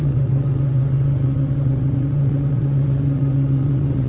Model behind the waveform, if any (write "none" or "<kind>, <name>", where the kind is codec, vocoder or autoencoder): vocoder, WaveNeXt